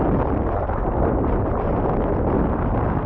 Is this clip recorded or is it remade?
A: recorded